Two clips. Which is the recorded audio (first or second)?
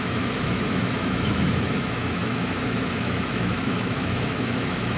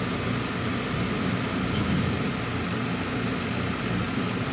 second